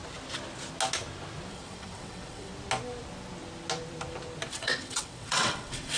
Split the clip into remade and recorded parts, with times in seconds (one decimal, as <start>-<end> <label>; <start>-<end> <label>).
0.0-1.5 recorded; 1.5-2.5 remade; 2.5-4.5 recorded; 4.5-6.0 remade